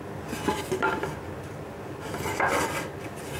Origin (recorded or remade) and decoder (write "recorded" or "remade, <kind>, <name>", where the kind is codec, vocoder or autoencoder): recorded